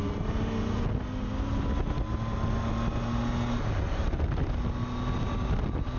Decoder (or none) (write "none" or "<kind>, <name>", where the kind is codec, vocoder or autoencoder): none